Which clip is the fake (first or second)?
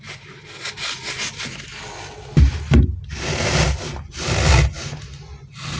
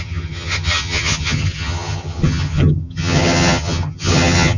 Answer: second